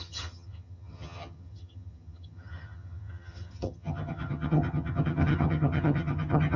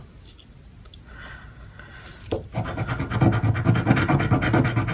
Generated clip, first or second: first